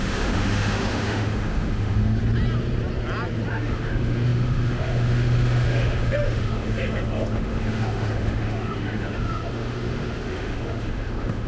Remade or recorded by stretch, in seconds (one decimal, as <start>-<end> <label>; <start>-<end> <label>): 0.0-2.2 remade; 2.2-3.5 recorded; 3.5-11.5 remade

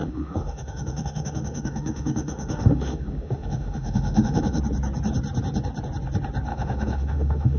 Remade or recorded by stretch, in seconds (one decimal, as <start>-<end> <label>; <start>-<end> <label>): 0.0-4.6 remade; 4.6-6.5 recorded; 6.5-7.6 remade

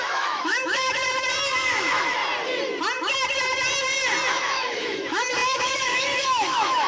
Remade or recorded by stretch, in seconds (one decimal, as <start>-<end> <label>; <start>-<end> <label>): 0.0-1.0 remade; 1.0-1.7 recorded; 1.7-2.2 remade; 2.2-4.3 recorded; 4.3-6.9 remade

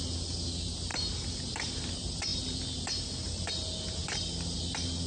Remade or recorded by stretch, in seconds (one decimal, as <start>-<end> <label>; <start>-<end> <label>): 0.0-5.1 recorded

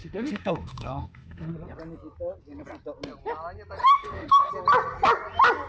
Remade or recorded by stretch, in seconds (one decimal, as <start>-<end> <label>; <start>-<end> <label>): 0.0-1.5 remade; 1.5-3.8 recorded; 3.8-4.5 remade; 4.5-5.7 recorded